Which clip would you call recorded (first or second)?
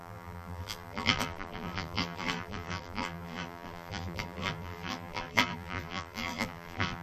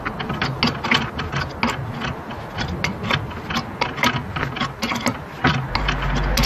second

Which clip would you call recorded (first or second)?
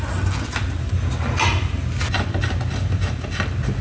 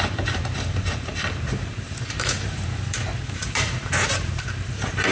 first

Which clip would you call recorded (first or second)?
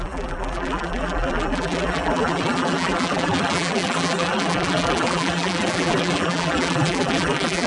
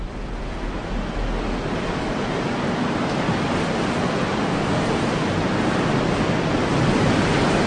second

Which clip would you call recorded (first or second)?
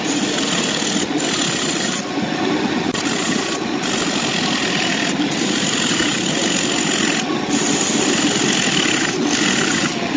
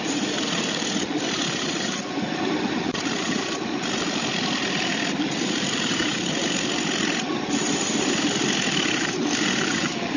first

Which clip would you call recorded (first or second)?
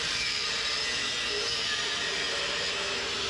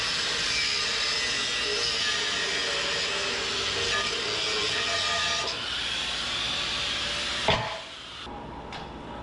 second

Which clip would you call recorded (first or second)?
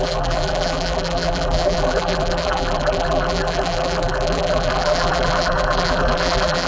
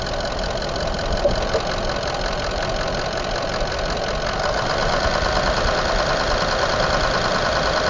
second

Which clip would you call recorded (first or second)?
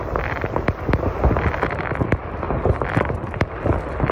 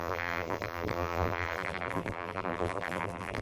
first